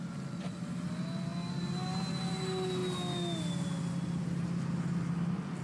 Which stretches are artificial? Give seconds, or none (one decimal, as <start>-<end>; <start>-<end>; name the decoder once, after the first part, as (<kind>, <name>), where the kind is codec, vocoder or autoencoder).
none